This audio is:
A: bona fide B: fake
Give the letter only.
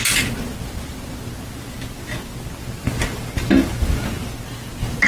A